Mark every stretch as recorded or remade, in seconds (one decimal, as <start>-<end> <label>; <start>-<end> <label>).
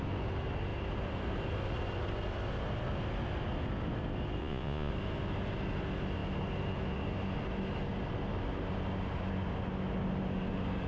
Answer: 0.0-4.4 recorded; 4.4-4.9 remade; 4.9-10.9 recorded